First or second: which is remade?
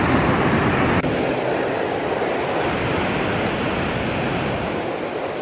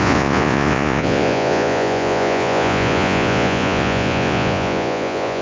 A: second